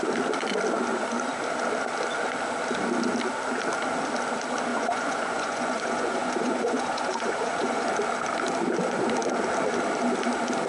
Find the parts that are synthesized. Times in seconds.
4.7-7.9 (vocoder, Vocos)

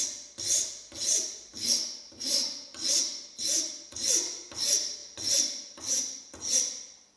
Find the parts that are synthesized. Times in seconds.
none

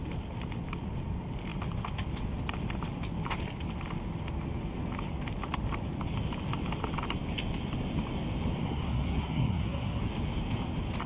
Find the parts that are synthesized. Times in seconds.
8.6-10.0 (codec, SNAC)

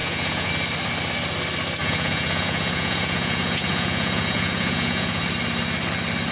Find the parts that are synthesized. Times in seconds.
0.0-0.5 (vocoder, Vocos); 1.8-5.2

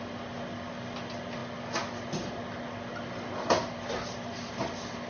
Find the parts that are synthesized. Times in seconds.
none

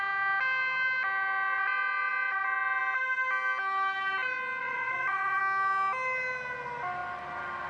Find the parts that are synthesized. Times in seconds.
4.6-5.4 (vocoder, Vocos)

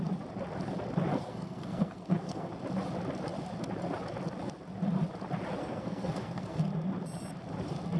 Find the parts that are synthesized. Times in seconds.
1.1-2.5 (codec, SNAC); 5.6-6.7